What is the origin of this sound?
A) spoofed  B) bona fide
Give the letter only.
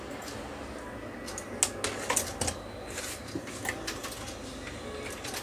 B